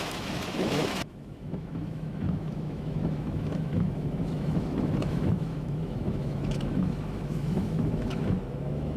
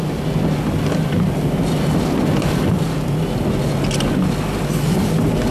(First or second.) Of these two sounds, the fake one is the first